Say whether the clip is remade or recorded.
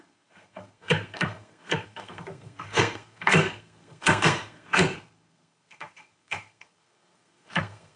remade